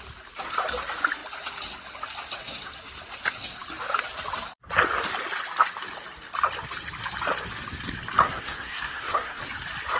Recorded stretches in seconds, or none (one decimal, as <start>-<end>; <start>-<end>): 0.0-8.2; 9.4-10.0